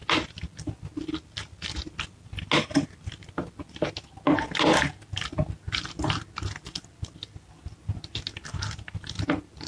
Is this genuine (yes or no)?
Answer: yes